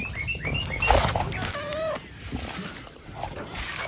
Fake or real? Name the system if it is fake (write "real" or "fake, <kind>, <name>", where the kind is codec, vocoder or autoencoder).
real